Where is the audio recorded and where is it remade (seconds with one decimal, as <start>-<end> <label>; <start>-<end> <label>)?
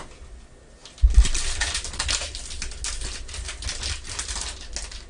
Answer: 0.0-5.1 recorded